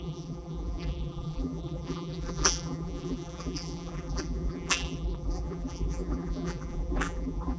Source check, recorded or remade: remade